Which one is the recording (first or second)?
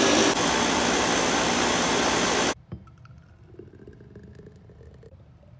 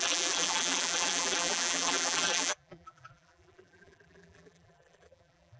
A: first